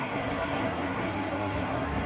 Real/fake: fake